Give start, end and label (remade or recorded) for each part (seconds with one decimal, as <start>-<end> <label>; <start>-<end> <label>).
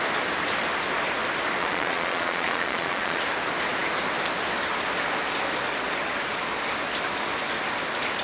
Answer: 0.0-1.6 recorded; 1.6-3.2 remade; 3.2-8.2 recorded